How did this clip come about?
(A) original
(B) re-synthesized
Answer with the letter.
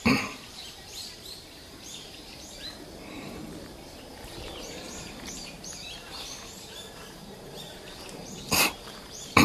B